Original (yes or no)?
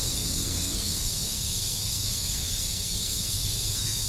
no